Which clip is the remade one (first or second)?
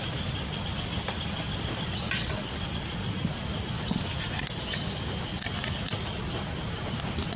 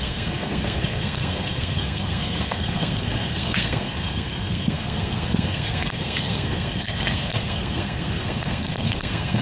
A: second